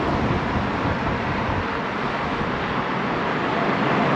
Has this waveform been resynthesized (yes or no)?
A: no